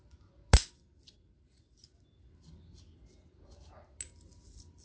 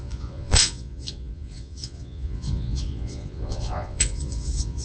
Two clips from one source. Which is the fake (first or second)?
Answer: second